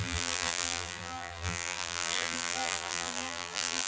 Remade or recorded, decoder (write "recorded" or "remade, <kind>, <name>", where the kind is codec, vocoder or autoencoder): remade, vocoder, BigVGAN v2